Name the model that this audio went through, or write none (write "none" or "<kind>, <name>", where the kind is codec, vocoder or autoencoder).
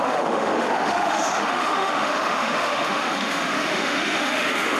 autoencoder, DAC-VAE